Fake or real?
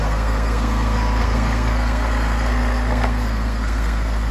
fake